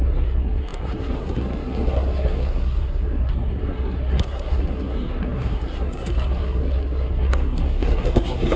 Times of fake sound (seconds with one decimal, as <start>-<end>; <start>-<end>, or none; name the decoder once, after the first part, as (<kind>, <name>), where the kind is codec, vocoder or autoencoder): 0.0-8.6 (codec, SNAC)